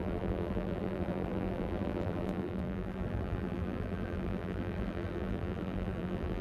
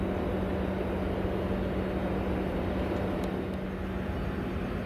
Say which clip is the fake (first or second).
first